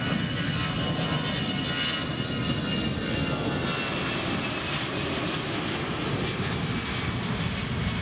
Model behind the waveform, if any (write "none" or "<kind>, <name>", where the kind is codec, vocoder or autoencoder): none